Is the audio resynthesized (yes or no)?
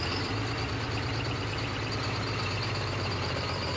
yes